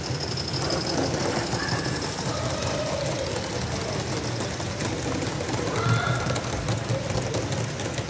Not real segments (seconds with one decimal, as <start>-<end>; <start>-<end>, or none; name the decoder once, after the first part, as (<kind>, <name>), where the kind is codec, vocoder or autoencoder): none